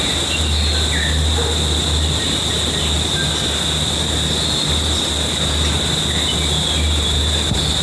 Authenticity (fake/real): real